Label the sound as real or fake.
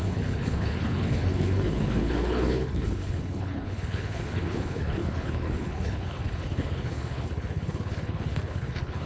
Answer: fake